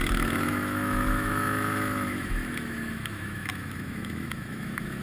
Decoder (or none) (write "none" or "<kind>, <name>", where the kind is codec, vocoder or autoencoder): autoencoder, DAC-VAE